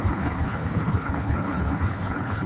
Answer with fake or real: fake